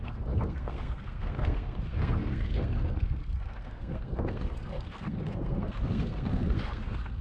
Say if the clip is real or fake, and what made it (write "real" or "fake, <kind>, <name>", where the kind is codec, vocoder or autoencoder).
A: fake, codec, SNAC